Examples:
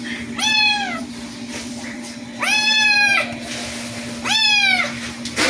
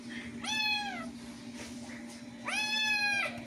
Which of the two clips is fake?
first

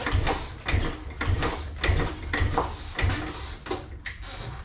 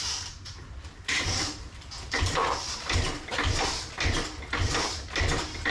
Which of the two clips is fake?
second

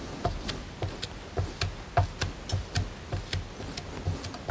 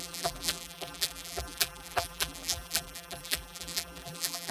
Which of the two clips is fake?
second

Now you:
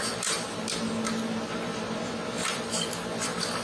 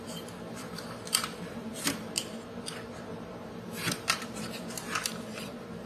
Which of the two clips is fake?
second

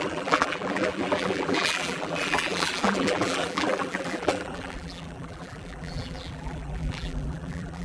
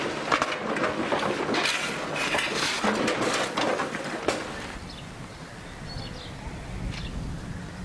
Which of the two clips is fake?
first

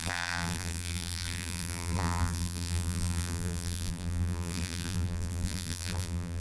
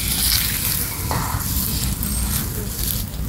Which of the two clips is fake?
first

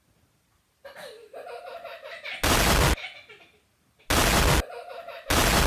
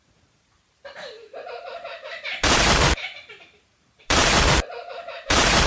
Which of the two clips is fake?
second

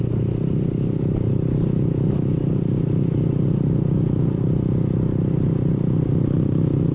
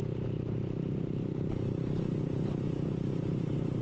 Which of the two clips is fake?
second